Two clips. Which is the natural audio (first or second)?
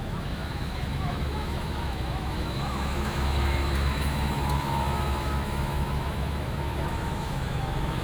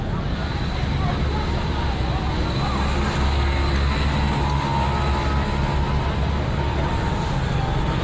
second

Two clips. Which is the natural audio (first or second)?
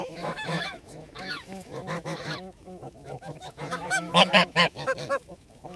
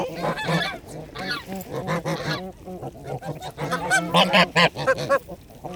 second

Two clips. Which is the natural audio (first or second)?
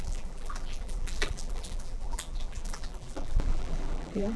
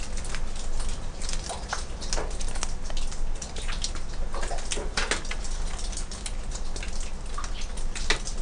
second